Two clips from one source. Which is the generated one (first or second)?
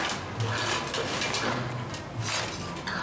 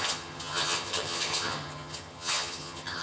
second